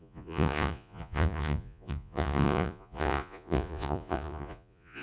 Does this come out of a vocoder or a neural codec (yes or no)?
yes